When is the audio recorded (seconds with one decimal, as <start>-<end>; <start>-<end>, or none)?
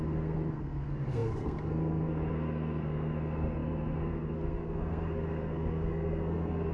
none